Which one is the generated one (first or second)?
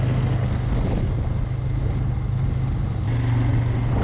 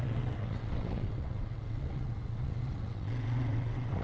second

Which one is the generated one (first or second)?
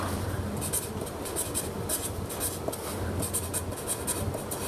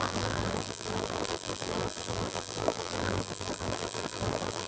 second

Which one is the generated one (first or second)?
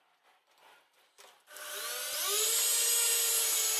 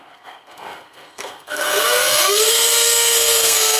second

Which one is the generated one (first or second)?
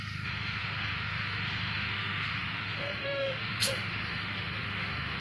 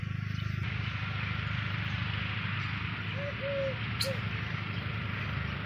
first